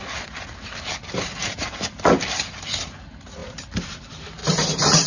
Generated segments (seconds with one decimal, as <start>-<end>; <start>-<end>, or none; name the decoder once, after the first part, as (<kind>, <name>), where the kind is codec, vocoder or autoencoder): 1.4-2.1 (vocoder, BigVGAN v2); 4.4-5.1